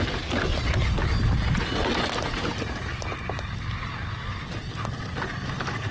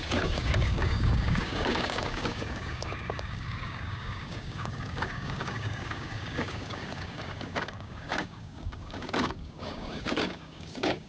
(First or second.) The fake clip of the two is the second